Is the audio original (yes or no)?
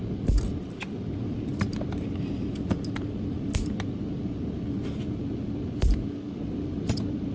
yes